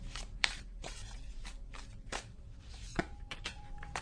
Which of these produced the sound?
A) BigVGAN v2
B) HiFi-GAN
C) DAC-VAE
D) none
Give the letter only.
A